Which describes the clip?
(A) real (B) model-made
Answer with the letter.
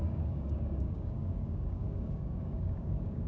B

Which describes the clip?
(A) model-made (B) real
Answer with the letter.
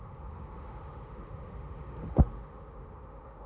A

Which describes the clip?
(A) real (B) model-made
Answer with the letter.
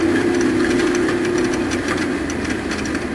A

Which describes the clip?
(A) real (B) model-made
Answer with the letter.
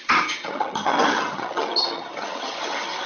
B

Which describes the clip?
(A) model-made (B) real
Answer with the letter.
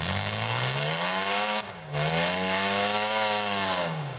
A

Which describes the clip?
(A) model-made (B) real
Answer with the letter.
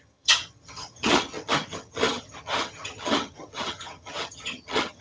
A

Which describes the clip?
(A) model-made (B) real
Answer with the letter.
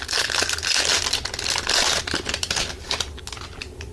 B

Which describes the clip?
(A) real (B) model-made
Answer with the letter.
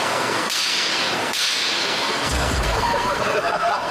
B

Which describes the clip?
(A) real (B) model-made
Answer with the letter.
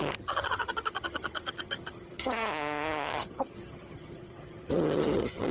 B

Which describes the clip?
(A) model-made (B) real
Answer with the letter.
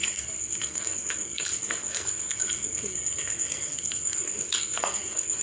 A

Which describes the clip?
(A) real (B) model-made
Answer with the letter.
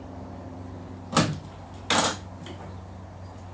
A